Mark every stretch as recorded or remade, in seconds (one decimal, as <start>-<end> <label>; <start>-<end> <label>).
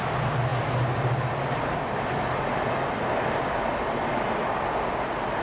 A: 0.0-5.4 recorded